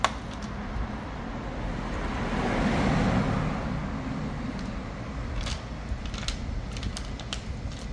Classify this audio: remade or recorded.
recorded